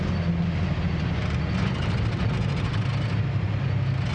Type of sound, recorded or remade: recorded